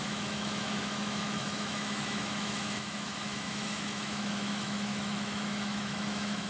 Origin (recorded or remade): remade